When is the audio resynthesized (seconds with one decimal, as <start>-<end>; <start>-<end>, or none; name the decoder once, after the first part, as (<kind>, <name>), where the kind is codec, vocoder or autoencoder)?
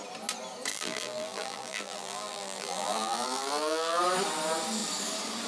0.7-4.0 (vocoder, BigVGAN v2)